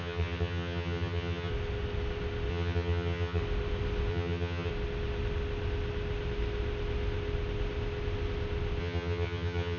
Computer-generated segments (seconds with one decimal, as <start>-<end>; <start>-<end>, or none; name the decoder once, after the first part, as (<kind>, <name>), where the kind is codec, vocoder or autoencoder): 0.0-1.5 (vocoder, HiFi-GAN); 2.5-3.4; 4.1-4.7; 8.8-9.8